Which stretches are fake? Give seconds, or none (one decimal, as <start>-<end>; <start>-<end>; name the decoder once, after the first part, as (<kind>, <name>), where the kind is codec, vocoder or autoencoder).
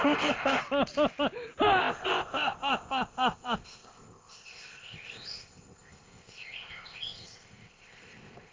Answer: 0.0-0.6 (codec, ZipCodec); 1.8-8.5